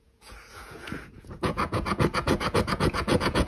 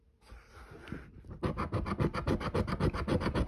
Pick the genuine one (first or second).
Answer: second